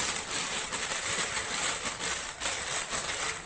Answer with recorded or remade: remade